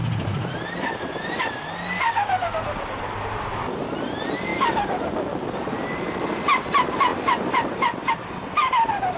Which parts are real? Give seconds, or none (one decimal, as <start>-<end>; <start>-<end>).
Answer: 0.0-4.5; 6.0-7.1; 8.1-9.2